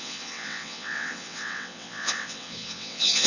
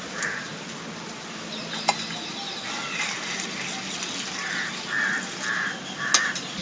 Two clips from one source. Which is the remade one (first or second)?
first